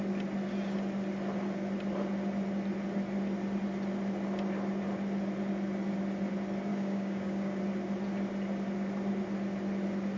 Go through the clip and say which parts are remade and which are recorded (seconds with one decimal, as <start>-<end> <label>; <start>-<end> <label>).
0.0-6.7 recorded; 6.7-7.6 remade; 7.6-10.2 recorded